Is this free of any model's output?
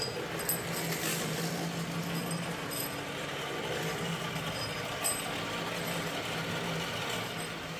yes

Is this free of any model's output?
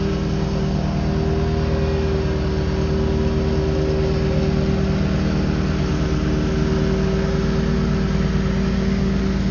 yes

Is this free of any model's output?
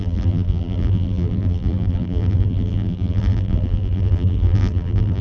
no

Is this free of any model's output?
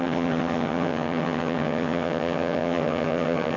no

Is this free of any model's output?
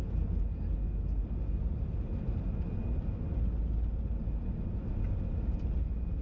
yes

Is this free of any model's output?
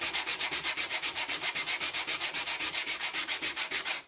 no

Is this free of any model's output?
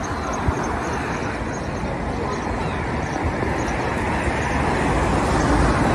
yes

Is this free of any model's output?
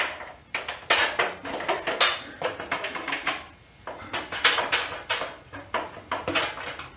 yes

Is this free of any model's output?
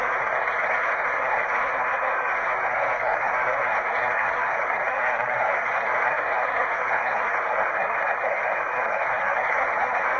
no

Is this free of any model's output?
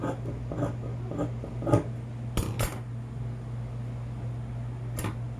yes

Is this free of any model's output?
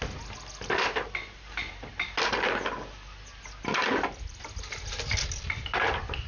yes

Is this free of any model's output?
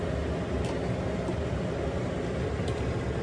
yes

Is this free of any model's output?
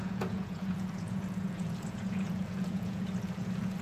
no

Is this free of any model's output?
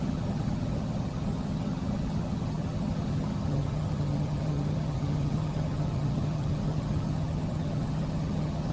no